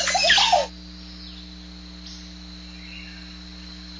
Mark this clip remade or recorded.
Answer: recorded